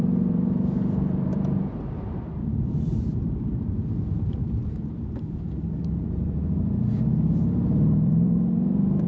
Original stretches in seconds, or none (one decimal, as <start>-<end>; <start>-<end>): none